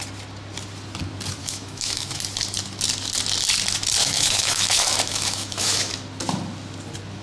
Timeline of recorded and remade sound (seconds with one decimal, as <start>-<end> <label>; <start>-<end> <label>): 0.0-1.4 recorded; 1.4-2.2 remade; 2.2-4.0 recorded; 4.0-5.9 remade; 5.9-7.2 recorded